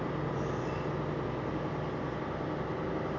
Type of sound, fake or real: real